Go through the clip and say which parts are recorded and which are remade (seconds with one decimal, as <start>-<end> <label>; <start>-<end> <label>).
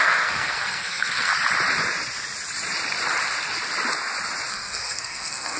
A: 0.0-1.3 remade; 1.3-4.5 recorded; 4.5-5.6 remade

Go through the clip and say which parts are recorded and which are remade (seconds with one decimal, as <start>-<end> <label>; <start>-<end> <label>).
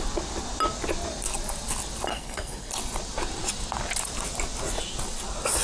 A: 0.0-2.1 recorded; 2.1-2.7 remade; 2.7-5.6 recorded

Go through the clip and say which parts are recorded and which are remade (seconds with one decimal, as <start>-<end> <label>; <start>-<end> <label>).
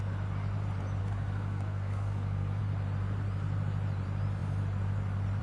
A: 0.0-1.0 recorded; 1.0-2.6 remade; 2.6-5.4 recorded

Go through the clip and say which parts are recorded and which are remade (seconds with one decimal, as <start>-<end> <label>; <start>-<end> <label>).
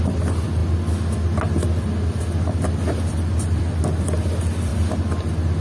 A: 0.0-5.6 recorded